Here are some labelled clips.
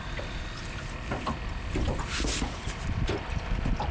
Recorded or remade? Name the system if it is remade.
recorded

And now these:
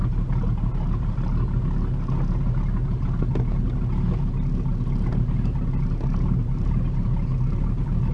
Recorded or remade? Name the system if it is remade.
recorded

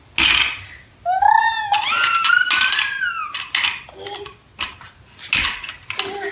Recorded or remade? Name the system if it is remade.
recorded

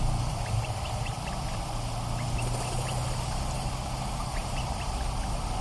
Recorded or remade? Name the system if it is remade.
recorded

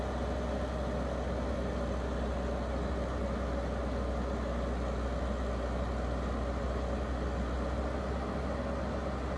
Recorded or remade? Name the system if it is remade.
recorded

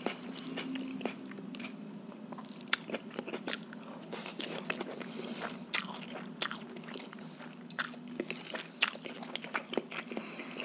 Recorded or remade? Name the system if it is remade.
recorded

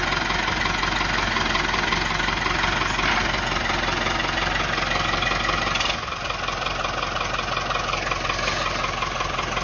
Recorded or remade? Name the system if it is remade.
recorded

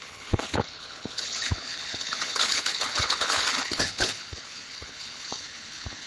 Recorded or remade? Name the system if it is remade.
remade, codec, HILCodec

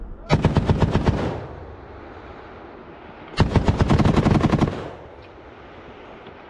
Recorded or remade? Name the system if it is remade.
recorded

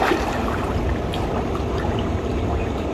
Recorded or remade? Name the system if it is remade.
recorded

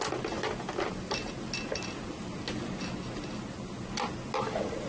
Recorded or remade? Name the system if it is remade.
recorded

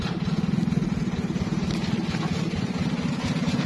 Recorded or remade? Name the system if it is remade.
recorded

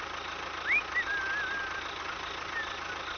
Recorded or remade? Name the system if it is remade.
recorded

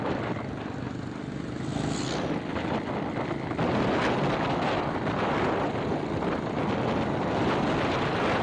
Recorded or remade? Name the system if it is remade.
recorded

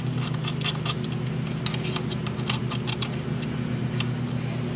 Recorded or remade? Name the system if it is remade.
recorded